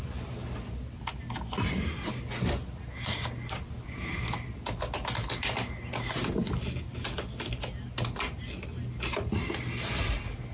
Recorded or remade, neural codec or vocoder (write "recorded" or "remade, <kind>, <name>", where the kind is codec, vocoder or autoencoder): recorded